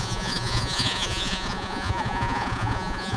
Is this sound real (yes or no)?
no